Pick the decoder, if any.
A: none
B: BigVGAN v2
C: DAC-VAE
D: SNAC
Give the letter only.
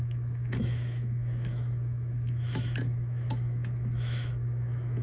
C